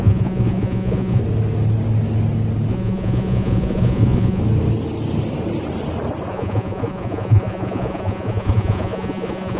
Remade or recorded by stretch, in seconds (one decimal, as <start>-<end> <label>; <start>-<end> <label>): 0.0-1.2 remade; 1.2-2.7 recorded; 2.7-4.4 remade; 4.4-6.3 recorded; 6.3-9.6 remade